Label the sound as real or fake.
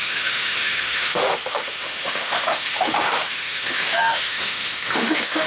fake